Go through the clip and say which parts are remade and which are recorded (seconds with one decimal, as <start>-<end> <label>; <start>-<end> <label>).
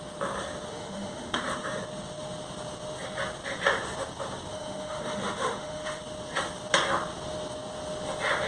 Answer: 0.0-0.7 recorded; 0.7-1.4 remade; 1.4-4.5 recorded; 4.5-6.0 remade; 6.0-8.5 recorded